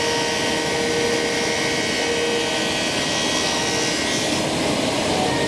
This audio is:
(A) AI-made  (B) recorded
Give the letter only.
B